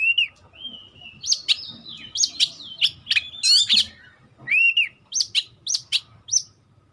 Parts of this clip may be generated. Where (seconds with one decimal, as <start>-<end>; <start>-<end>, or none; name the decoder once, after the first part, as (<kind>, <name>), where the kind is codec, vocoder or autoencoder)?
0.8-2.6 (vocoder, BigVGAN v2); 3.6-6.0